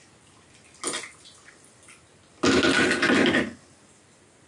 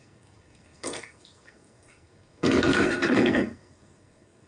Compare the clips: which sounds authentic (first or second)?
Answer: first